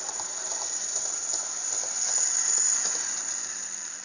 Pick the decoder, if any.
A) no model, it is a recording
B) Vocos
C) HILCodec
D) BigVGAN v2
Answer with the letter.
A